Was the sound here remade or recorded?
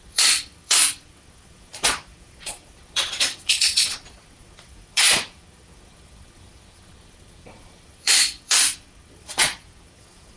remade